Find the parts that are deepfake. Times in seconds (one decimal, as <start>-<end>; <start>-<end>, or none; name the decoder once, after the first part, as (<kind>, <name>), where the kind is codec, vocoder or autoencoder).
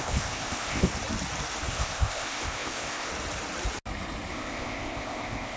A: 0.0-0.9 (codec, ZipCodec); 1.7-3.1; 4.3-5.6